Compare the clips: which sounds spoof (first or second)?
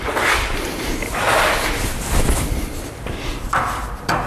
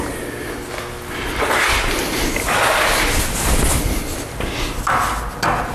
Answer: first